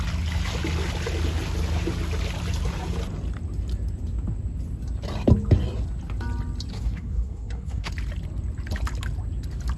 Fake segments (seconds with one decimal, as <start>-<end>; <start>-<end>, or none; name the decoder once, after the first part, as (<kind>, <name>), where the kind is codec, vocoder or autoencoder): 6.7-7.9 (codec, SNAC)